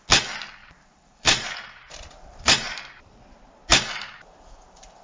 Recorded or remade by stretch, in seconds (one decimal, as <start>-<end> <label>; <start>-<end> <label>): 0.0-0.6 recorded; 0.6-3.4 remade; 3.4-5.0 recorded